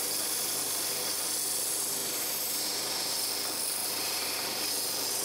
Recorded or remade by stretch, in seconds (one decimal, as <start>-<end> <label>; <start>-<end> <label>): 0.0-2.0 recorded; 2.0-2.9 remade; 2.9-3.8 recorded; 3.8-4.6 remade; 4.6-5.2 recorded